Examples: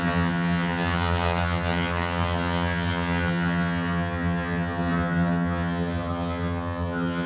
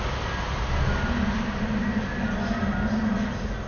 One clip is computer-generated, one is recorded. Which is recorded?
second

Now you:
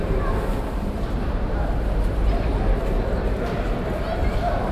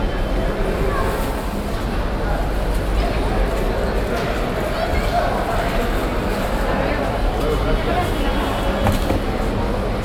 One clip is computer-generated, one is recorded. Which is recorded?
second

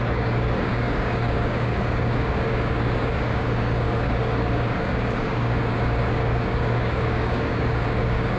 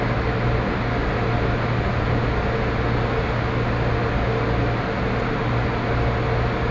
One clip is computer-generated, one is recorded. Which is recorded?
second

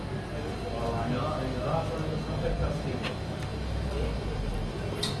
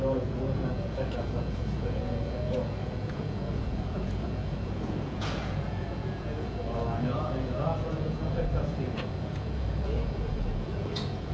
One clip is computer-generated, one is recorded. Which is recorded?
first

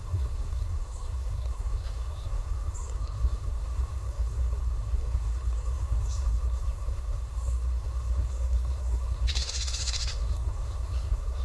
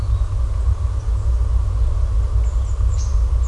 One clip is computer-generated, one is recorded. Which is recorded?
second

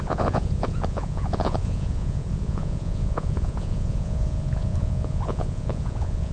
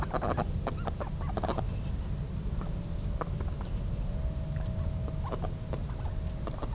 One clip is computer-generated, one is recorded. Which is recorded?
second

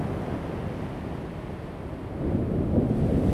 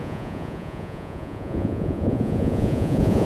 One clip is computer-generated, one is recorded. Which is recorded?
first